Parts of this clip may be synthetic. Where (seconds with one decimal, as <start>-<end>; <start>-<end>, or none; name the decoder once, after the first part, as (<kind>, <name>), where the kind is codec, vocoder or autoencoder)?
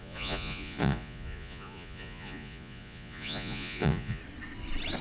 0.0-4.2 (vocoder, Vocos)